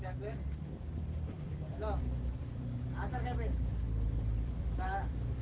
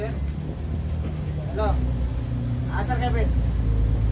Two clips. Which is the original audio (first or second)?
second